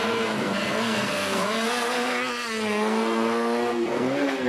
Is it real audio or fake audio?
fake